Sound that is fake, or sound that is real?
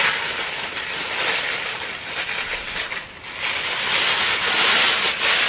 real